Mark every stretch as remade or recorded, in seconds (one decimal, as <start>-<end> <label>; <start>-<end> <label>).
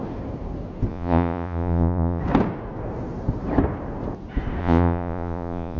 0.0-0.9 recorded; 0.9-2.2 remade; 2.2-4.6 recorded; 4.6-5.8 remade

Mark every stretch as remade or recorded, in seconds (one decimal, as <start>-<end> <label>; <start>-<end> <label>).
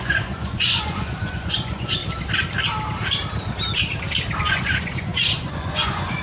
0.0-2.0 remade; 2.0-4.5 recorded; 4.5-6.2 remade